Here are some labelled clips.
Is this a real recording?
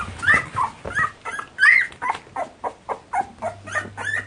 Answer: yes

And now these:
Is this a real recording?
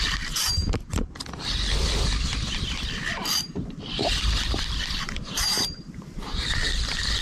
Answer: no